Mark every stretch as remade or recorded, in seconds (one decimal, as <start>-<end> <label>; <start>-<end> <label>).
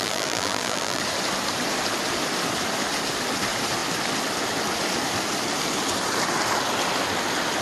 0.0-1.0 remade; 1.0-7.6 recorded